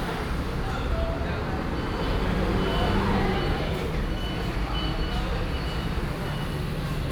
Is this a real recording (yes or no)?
yes